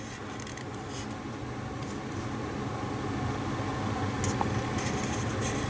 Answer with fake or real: real